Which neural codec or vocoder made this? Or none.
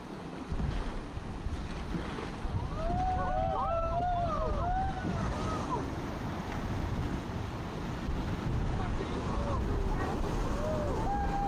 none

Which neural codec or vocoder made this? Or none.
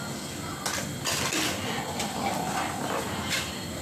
none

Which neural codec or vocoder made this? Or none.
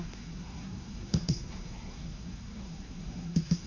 codec, SNAC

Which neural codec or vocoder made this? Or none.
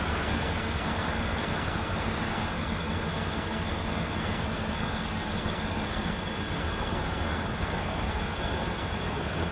codec, SNAC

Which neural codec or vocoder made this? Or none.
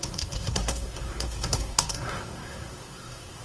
codec, SNAC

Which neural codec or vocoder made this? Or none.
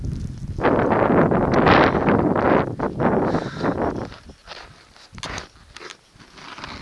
none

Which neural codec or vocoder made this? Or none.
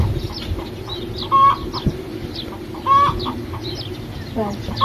none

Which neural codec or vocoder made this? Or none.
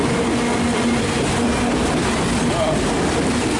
none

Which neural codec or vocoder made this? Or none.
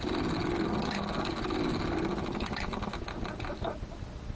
none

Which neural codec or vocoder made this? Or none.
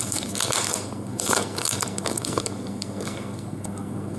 codec, SNAC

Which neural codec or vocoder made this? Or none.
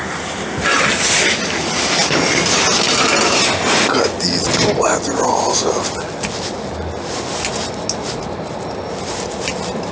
none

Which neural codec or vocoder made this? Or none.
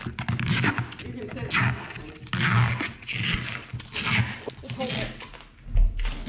none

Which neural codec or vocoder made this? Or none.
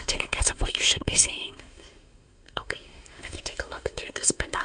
codec, SNAC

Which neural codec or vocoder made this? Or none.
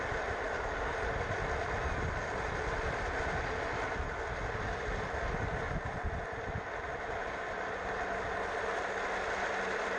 none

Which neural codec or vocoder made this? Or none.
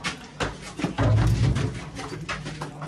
none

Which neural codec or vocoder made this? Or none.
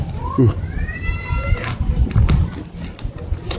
none